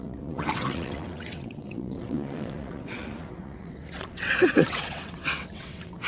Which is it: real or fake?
fake